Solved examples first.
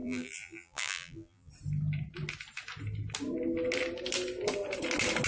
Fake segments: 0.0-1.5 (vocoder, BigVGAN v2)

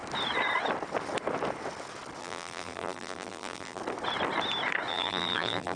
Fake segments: 2.2-3.8 (vocoder, BigVGAN v2); 4.9-5.8

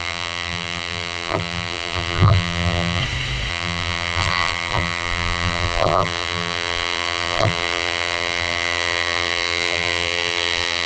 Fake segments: 0.0-3.0 (vocoder, BigVGAN v2); 3.5-10.9